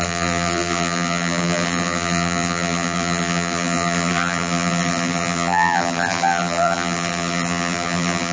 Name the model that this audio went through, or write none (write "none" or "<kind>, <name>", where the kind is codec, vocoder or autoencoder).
vocoder, BigVGAN v2